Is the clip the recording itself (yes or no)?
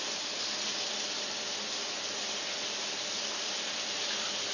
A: yes